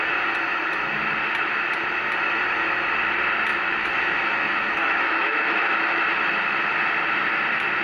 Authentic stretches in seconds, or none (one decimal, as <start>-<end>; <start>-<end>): 0.0-3.5; 6.0-7.8